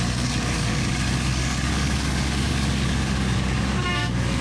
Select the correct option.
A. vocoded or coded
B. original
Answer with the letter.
A